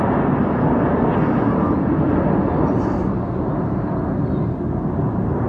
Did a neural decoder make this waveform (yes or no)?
no